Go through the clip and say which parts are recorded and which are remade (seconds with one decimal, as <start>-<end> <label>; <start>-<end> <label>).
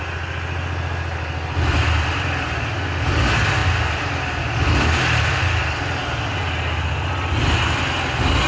0.0-8.5 recorded